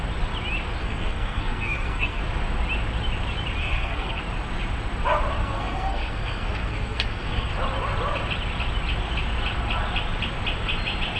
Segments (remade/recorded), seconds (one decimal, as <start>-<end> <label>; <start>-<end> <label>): 0.0-0.8 recorded; 0.8-2.2 remade; 2.2-3.6 recorded; 3.6-4.2 remade; 4.2-5.4 recorded; 5.4-7.5 remade; 7.5-11.2 recorded